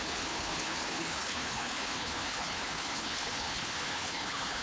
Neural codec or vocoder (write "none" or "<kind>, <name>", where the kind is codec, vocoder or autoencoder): codec, HILCodec